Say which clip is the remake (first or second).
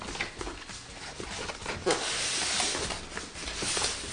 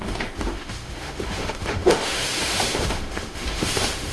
second